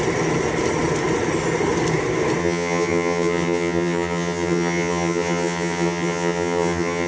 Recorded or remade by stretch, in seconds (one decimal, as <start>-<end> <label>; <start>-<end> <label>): 0.0-2.4 recorded; 2.4-7.1 remade